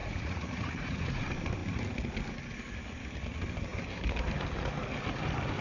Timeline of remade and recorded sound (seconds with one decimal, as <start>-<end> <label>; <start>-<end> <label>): 0.0-1.2 remade; 1.2-5.6 recorded